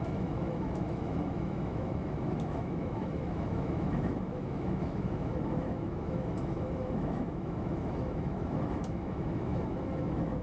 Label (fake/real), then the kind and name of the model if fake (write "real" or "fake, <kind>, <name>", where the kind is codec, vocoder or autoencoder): fake, autoencoder, DAC-VAE